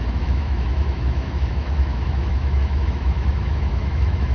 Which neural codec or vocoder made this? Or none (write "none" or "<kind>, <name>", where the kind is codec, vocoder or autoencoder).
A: autoencoder, DAC-VAE